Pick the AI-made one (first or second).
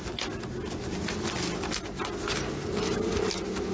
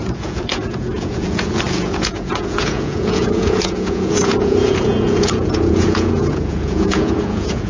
second